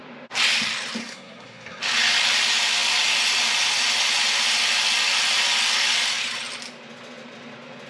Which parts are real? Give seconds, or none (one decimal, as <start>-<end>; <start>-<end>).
0.0-1.0; 1.8-7.9